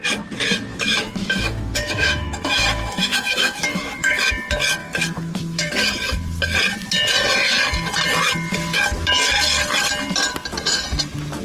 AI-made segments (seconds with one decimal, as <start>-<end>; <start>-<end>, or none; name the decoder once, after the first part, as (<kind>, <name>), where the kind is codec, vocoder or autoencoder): 0.7-4.3 (autoencoder, DAC-VAE); 4.8-5.7